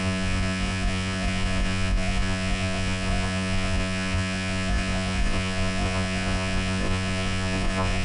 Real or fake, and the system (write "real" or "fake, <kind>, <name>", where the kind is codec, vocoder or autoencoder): fake, vocoder, Vocos